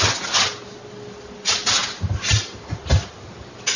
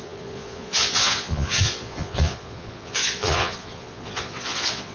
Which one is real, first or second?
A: first